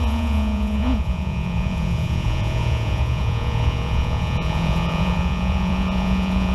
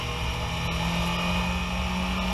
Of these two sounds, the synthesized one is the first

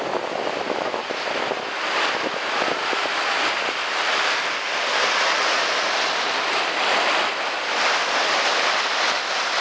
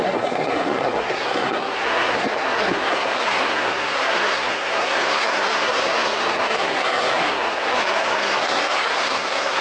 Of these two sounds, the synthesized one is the second